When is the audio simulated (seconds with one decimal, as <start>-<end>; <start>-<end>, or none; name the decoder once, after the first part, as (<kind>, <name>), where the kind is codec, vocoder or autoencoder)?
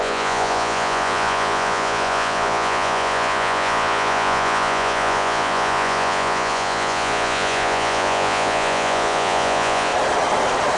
0.0-9.9 (vocoder, Vocos)